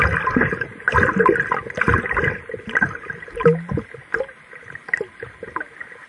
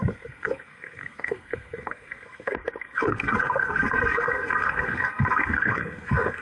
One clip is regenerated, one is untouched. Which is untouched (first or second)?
first